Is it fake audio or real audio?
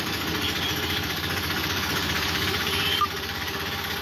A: fake